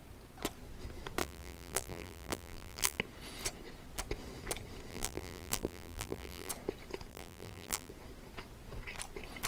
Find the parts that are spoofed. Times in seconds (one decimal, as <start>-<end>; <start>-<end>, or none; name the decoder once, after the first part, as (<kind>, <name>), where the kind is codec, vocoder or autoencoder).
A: 1.2-3.0 (vocoder, BigVGAN v2); 4.9-6.5; 7.1-7.9